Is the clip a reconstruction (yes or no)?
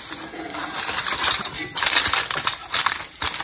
no